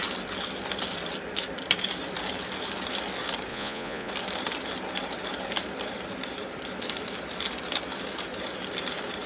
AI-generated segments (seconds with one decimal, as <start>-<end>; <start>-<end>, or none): 3.5-4.1